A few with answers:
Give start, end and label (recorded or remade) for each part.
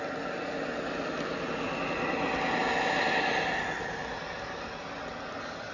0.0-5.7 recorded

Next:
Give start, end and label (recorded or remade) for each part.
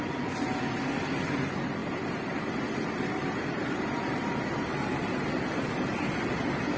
0.0-6.8 recorded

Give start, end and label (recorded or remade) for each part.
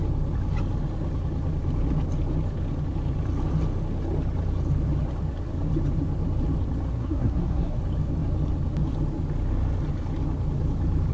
0.0-6.9 recorded; 6.9-7.8 remade; 7.8-11.1 recorded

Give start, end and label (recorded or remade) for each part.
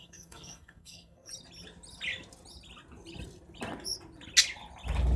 0.0-1.3 remade; 1.3-5.2 recorded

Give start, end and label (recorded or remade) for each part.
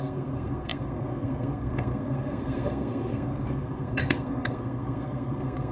0.0-5.7 remade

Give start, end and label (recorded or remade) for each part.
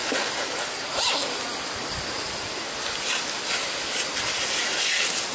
0.0-5.3 recorded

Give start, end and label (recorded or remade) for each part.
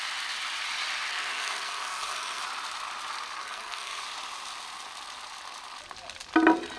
0.0-1.1 recorded; 1.1-2.4 remade; 2.4-3.4 recorded; 3.4-4.0 remade; 4.0-6.8 recorded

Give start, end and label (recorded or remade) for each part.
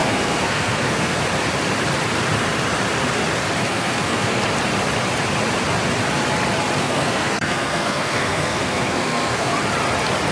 0.0-1.2 remade; 1.2-3.7 recorded; 3.7-4.4 remade; 4.4-6.8 recorded; 6.8-9.5 remade; 9.5-10.3 recorded